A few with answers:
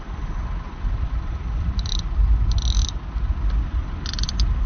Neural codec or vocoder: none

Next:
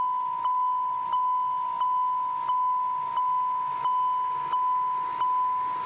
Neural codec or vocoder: none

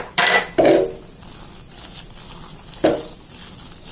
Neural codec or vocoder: none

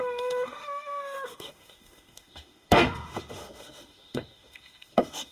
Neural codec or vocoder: autoencoder, DAC-VAE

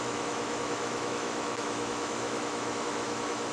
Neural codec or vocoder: autoencoder, DAC-VAE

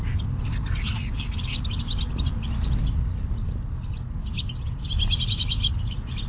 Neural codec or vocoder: none